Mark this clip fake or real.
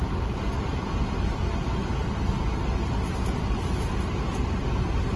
real